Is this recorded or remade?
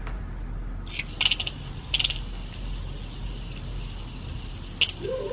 recorded